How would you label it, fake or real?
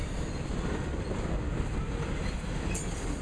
real